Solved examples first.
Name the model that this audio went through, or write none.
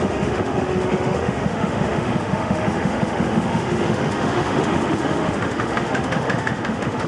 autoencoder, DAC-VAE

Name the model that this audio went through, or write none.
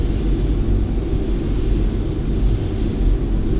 none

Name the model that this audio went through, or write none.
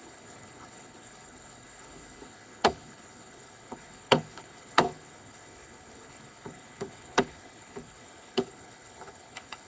codec, HILCodec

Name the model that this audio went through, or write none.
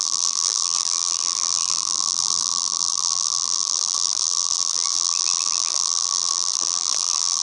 vocoder, BigVGAN v2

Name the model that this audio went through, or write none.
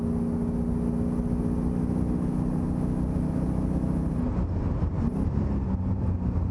none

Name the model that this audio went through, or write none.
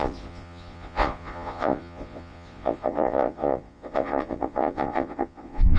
vocoder, Vocos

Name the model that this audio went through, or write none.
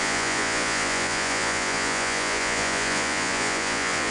vocoder, Vocos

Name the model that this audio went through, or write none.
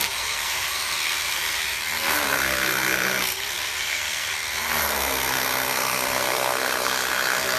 codec, SNAC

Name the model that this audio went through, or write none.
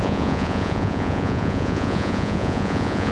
vocoder, Vocos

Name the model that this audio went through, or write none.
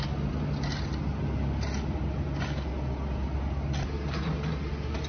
none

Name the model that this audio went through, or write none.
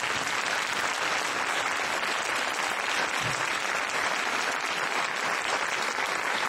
none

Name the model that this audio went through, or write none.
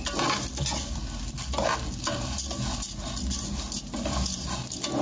none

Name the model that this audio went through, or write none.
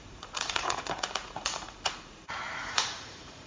vocoder, Vocos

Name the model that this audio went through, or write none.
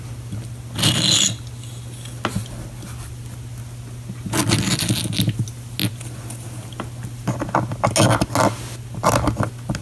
none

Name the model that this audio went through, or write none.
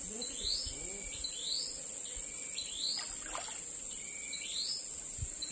none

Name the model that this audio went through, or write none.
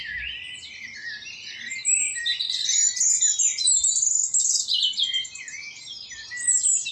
none